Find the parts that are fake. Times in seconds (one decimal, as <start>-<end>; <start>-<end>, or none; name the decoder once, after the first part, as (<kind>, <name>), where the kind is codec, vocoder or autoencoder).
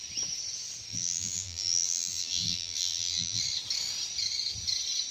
0.9-3.4 (vocoder, BigVGAN v2)